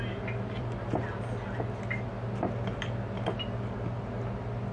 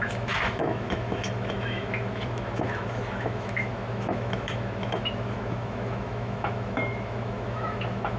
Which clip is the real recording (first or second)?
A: first